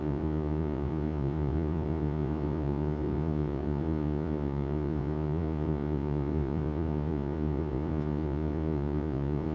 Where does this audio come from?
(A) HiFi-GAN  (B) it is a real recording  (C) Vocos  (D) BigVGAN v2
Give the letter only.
C